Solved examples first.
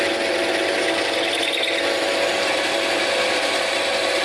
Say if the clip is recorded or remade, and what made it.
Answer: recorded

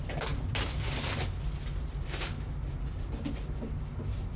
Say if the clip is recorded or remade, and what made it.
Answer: recorded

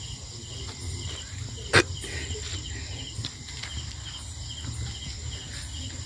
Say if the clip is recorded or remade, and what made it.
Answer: recorded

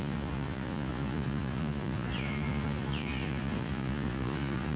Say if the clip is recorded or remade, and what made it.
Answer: remade, vocoder, Vocos